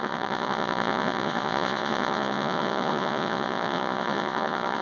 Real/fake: fake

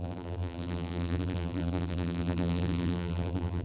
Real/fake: fake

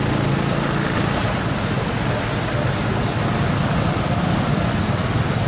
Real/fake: real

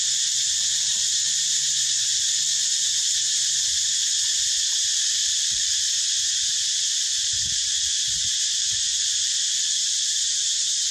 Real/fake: fake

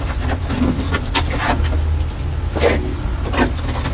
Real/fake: real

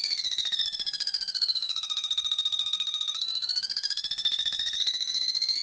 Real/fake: fake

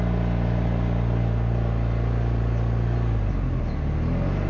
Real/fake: real